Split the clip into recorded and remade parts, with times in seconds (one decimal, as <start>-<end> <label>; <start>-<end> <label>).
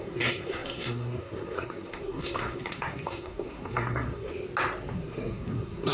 0.0-4.3 remade; 4.3-4.9 recorded; 4.9-5.9 remade